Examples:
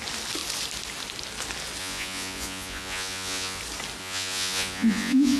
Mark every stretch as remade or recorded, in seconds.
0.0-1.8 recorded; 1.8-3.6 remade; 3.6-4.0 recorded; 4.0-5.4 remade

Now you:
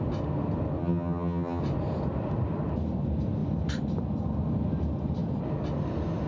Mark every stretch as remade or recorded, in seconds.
0.0-0.8 recorded; 0.8-1.6 remade; 1.6-6.3 recorded